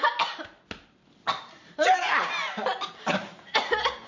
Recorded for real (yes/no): yes